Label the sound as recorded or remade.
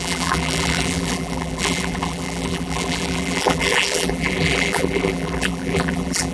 remade